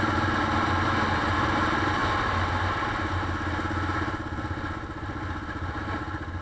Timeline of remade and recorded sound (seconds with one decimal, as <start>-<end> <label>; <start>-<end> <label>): 0.0-6.4 recorded